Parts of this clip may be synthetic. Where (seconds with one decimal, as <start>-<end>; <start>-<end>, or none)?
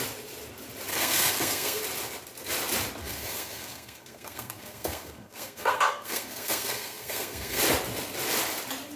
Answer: 0.9-1.8; 3.0-7.6